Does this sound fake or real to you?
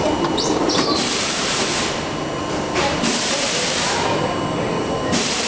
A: fake